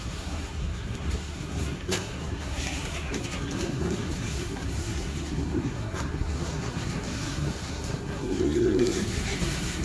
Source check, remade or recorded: remade